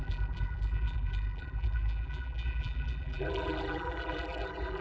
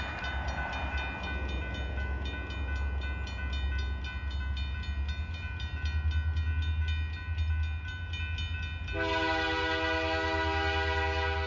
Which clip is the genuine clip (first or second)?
second